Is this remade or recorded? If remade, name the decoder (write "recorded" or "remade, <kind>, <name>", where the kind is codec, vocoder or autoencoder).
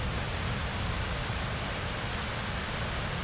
recorded